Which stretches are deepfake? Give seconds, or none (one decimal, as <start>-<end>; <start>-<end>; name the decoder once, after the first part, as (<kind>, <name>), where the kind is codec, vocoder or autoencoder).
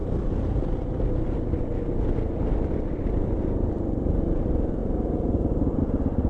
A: none